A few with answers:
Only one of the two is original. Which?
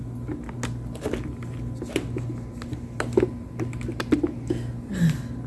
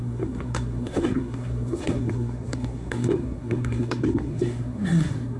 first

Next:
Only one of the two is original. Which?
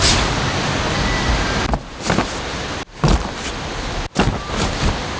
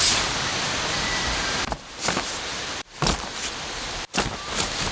first